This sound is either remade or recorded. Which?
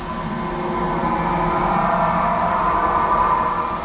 recorded